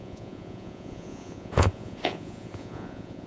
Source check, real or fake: fake